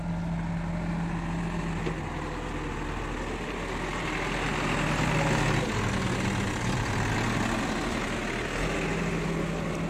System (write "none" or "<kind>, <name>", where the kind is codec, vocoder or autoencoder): none